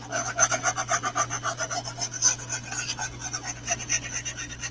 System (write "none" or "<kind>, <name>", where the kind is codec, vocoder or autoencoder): none